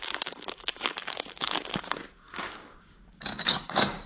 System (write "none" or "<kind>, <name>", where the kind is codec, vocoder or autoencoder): codec, DAC